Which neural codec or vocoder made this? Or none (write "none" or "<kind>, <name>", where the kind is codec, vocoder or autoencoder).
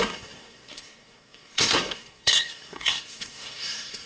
codec, SNAC